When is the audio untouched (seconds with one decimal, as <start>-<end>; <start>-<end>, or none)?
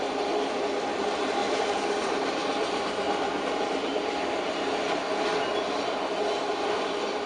0.0-7.3